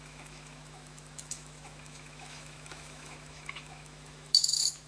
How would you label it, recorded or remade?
remade